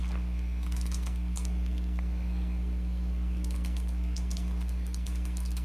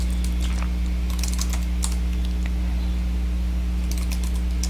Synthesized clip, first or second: first